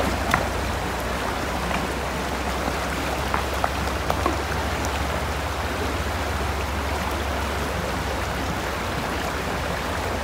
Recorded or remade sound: recorded